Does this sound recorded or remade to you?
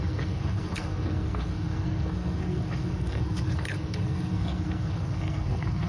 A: remade